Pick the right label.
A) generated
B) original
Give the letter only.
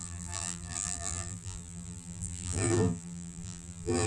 A